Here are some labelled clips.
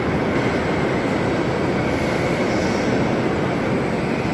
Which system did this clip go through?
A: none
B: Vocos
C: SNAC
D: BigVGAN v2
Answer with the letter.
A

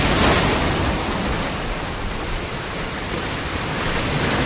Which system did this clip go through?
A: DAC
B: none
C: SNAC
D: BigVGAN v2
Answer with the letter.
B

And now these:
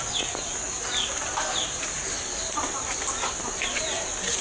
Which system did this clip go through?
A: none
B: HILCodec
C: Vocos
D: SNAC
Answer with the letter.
A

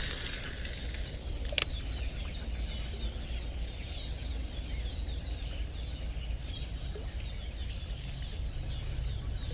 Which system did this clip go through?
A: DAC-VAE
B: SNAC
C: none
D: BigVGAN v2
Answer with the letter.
C